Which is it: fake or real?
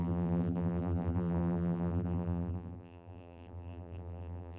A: fake